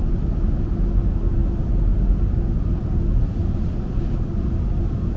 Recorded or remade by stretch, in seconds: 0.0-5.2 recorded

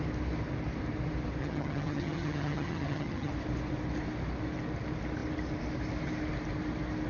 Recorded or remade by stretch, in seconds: 0.0-1.4 recorded; 1.4-3.3 remade; 3.3-7.1 recorded

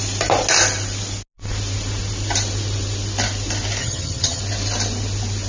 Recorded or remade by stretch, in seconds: 0.0-3.8 recorded; 3.8-4.4 remade; 4.4-5.5 recorded

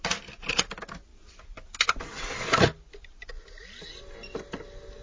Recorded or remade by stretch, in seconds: 0.0-5.0 recorded